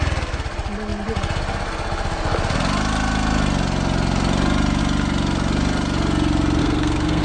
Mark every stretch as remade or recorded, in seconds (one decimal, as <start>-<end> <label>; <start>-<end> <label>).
0.0-6.6 recorded; 6.6-7.2 remade